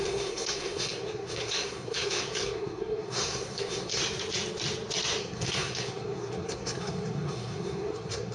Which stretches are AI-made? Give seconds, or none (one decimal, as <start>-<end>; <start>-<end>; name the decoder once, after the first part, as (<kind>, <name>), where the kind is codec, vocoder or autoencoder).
0.0-4.0 (codec, SNAC); 5.2-8.3